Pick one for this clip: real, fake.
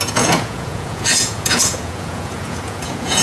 fake